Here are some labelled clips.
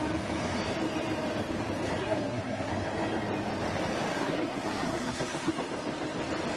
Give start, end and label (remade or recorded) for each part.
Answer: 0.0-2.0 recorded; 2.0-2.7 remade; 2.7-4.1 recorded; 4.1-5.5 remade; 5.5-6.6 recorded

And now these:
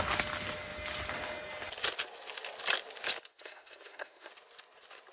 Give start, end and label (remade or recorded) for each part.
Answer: 0.0-3.3 recorded; 3.3-4.3 remade; 4.3-5.1 recorded

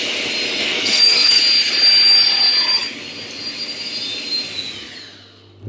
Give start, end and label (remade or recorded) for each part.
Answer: 0.0-0.6 recorded; 0.6-1.4 remade; 1.4-5.7 recorded

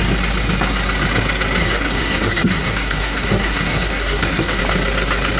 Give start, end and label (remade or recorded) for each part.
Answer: 0.0-1.6 recorded; 1.6-4.6 remade; 4.6-5.4 recorded

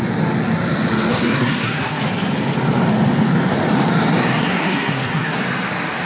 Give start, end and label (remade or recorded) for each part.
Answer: 0.0-1.1 recorded; 1.1-2.0 remade; 2.0-4.4 recorded; 4.4-5.4 remade; 5.4-6.1 recorded

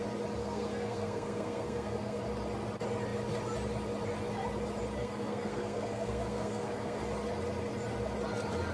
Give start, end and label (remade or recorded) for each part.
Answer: 0.0-0.4 recorded; 0.4-2.2 remade; 2.2-5.0 recorded; 5.0-7.0 remade; 7.0-8.7 recorded

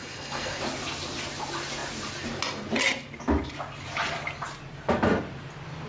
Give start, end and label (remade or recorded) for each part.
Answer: 0.0-0.6 remade; 0.6-5.9 recorded